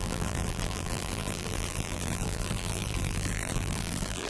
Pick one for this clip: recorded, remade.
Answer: remade